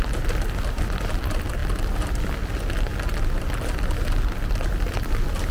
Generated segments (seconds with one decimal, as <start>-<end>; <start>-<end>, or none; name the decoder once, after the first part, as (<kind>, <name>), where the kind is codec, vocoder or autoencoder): none